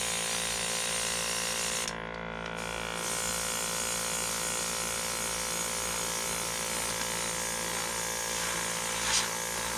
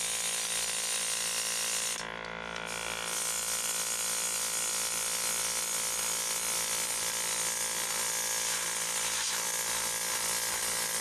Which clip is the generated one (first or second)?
second